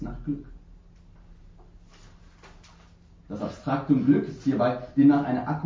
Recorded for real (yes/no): yes